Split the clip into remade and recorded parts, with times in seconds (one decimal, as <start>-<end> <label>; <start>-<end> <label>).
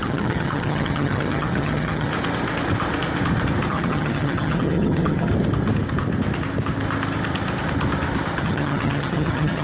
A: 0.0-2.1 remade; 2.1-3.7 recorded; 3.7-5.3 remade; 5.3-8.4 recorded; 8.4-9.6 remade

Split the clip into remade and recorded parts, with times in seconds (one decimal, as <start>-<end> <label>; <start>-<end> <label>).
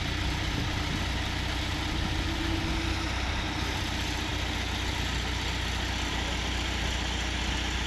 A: 0.0-7.9 recorded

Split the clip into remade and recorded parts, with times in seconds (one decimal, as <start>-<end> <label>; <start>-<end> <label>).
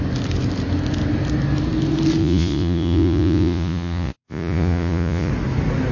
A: 0.0-2.2 recorded; 2.2-5.3 remade; 5.3-5.9 recorded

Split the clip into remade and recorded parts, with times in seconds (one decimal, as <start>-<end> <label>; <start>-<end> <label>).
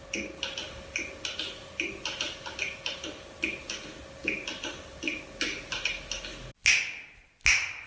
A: 0.0-7.9 recorded